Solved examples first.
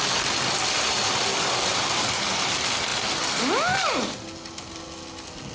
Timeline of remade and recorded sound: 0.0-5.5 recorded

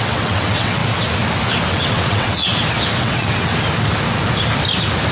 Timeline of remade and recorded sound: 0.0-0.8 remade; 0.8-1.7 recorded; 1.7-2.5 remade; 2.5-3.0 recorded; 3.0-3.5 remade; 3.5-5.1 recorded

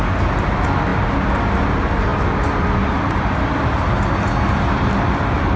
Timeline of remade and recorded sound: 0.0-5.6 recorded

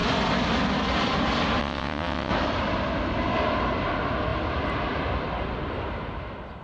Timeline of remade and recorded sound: 0.0-1.6 recorded; 1.6-2.3 remade; 2.3-6.6 recorded

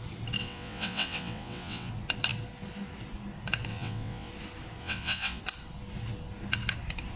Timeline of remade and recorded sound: 0.0-0.4 recorded; 0.4-1.9 remade; 1.9-3.7 recorded; 3.7-4.3 remade; 4.3-4.8 recorded; 4.8-5.4 remade; 5.4-7.2 recorded

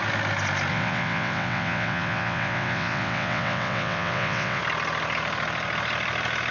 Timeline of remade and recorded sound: 0.0-0.7 recorded; 0.7-4.6 remade; 4.6-6.5 recorded